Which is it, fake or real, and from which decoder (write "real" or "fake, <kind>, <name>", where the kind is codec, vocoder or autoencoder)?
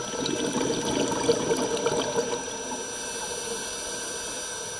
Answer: real